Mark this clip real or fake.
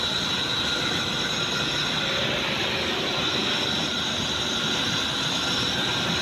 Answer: real